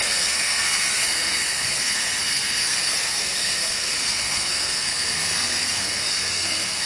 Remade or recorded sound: remade